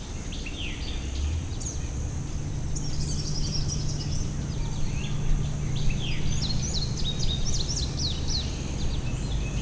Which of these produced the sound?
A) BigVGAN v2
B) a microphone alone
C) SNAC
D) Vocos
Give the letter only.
B